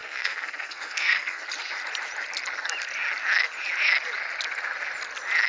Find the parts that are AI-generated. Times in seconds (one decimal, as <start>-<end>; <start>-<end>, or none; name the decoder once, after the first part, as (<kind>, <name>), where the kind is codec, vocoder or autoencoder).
0.0-1.4 (codec, SNAC)